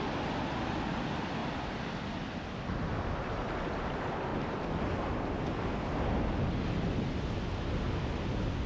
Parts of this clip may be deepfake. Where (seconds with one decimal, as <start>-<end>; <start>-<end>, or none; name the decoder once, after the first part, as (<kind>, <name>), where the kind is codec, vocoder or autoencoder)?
none